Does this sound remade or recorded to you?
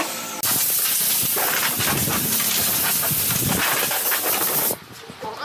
recorded